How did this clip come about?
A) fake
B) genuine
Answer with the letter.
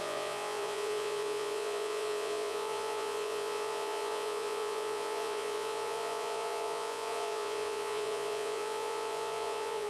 A